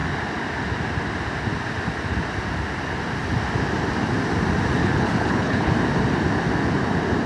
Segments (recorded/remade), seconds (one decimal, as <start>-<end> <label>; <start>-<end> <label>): 0.0-4.8 recorded; 4.8-5.7 remade; 5.7-7.3 recorded